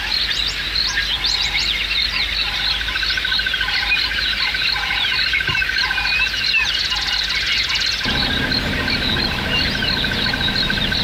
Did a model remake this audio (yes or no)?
no